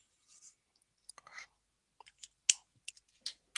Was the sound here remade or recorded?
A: recorded